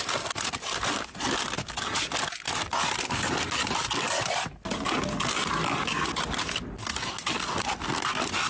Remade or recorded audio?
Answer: recorded